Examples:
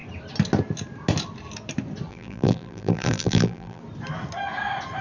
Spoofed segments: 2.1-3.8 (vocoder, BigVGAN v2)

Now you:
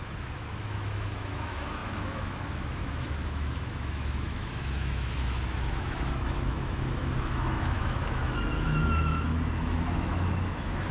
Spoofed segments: 0.0-10.9 (autoencoder, DAC-VAE)

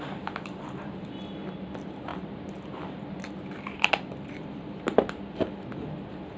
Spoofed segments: none